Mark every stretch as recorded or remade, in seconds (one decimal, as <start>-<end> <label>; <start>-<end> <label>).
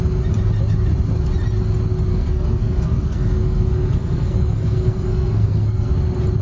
0.0-2.1 recorded; 2.1-5.9 remade; 5.9-6.4 recorded